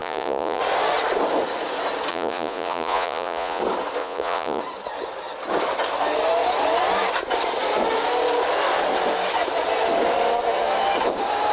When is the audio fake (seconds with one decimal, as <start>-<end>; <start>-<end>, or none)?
0.0-0.6; 2.1-3.6; 4.0-4.6